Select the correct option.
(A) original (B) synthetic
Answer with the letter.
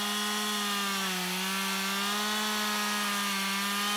A